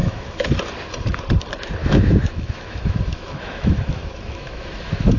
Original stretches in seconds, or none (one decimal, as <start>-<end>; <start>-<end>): 0.6-1.8